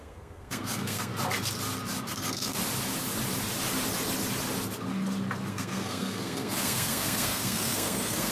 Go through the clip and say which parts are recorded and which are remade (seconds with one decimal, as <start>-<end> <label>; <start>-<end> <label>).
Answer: 0.0-1.1 remade; 1.1-2.1 recorded; 2.1-2.6 remade; 2.6-5.5 recorded; 5.5-8.3 remade